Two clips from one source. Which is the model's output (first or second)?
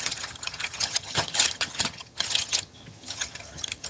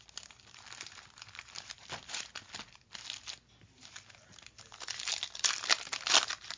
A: first